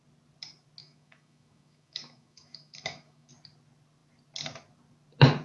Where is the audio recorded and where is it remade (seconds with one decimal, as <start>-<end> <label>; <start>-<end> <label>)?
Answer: 0.0-0.8 recorded; 0.8-3.3 remade; 3.3-5.4 recorded